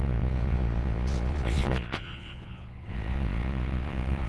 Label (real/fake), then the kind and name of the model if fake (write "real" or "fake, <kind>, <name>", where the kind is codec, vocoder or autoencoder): fake, vocoder, Vocos